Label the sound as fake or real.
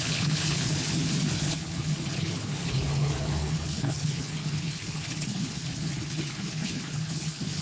fake